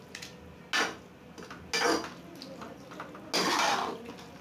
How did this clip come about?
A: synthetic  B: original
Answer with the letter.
B